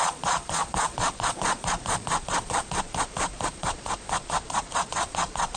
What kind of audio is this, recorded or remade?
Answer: remade